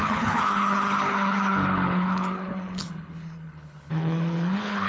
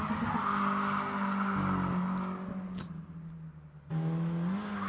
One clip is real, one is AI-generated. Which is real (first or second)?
second